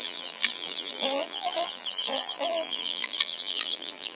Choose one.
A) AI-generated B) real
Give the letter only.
A